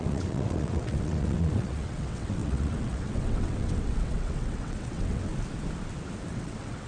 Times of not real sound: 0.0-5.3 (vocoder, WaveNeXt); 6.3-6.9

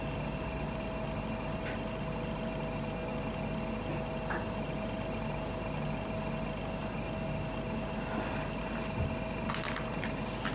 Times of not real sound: none